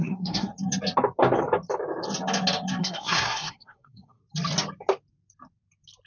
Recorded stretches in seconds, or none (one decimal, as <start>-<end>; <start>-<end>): 0.5-2.8; 4.2-6.1